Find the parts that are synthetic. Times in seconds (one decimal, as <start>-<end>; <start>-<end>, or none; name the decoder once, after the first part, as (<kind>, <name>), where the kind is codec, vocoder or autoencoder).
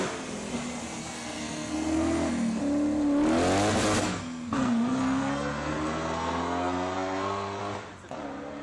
1.0-2.6 (codec, SNAC); 4.0-7.6